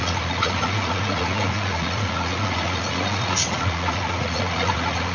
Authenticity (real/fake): fake